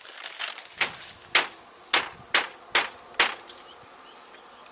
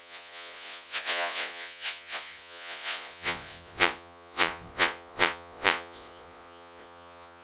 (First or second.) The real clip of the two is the first